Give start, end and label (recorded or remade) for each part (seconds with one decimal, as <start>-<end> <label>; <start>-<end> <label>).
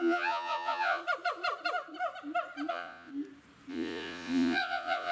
0.0-1.0 remade; 1.0-2.7 recorded; 2.7-3.1 remade; 3.1-3.7 recorded; 3.7-5.1 remade